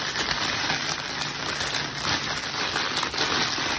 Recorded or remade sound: recorded